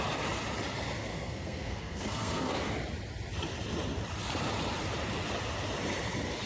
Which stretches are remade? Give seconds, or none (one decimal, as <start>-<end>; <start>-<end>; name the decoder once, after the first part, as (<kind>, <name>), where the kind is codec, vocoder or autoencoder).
1.1-2.7 (codec, SNAC)